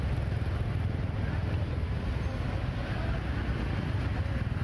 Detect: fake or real real